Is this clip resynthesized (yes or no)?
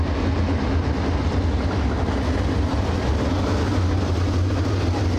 no